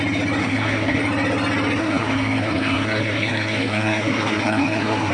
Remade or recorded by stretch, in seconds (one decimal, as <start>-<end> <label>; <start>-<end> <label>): 0.0-0.4 recorded; 0.4-1.0 remade; 1.0-1.8 recorded; 1.8-5.1 remade